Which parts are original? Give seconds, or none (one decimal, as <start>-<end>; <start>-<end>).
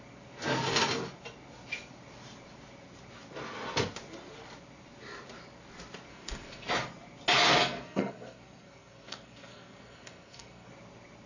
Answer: 0.0-6.1; 6.7-7.6; 10.7-11.3